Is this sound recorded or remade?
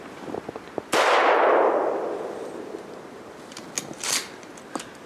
recorded